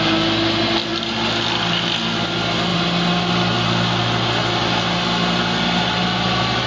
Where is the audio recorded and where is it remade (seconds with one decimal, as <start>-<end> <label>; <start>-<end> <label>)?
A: 0.0-6.7 recorded